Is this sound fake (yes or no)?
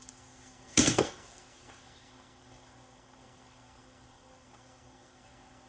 yes